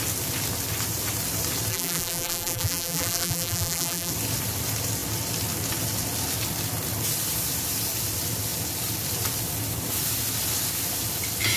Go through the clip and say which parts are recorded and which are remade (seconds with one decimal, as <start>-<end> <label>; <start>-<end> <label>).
0.0-1.7 recorded; 1.7-4.1 remade; 4.1-11.6 recorded

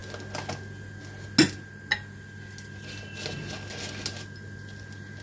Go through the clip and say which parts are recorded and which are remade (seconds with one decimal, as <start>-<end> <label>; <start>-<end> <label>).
0.0-5.2 recorded